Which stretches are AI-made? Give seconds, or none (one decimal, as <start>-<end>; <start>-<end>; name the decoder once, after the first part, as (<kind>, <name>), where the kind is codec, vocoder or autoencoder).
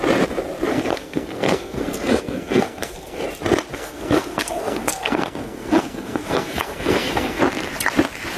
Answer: 0.7-3.2 (codec, SNAC); 3.7-7.4